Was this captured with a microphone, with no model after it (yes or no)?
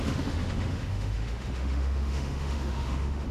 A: no